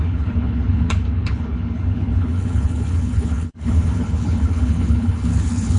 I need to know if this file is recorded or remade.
remade